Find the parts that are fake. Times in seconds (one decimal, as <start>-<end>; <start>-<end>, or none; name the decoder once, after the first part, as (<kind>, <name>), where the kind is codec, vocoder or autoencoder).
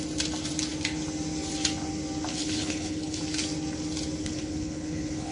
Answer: 2.3-3.2 (codec, HILCodec); 4.2-5.3